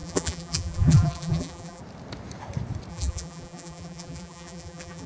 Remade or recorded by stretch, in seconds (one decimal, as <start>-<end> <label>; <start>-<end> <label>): 0.0-1.8 remade; 1.8-2.9 recorded; 2.9-5.1 remade